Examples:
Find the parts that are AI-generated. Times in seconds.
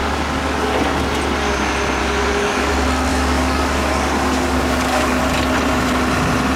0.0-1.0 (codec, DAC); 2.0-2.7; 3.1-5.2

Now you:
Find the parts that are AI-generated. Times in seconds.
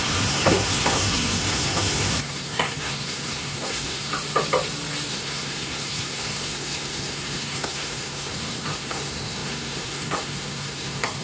0.0-4.1 (codec, SNAC); 5.1-11.2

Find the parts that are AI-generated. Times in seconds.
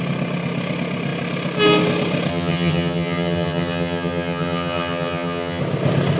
2.3-5.6 (vocoder, HiFi-GAN)